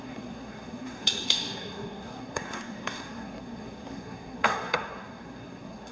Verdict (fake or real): fake